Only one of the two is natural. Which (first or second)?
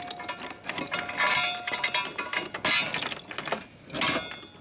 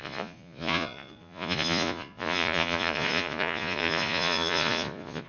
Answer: first